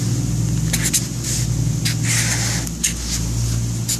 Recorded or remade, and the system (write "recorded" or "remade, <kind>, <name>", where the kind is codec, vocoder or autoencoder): recorded